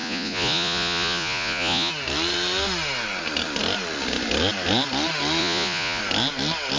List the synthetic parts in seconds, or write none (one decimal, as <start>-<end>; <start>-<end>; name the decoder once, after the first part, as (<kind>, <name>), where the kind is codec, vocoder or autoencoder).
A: 0.0-1.9 (vocoder, Vocos); 5.4-6.0